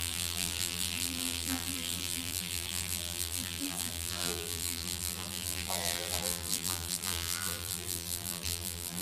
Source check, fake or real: fake